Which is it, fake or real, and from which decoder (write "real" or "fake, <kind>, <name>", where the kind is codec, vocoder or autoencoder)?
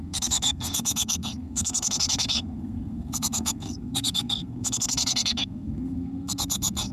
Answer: fake, codec, SNAC